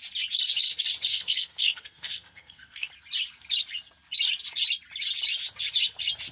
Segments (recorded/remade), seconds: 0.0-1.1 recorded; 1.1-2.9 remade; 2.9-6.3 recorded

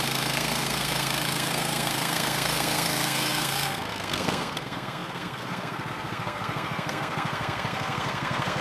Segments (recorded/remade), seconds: 0.0-8.6 remade